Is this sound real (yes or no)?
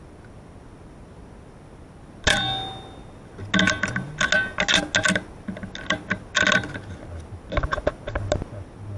yes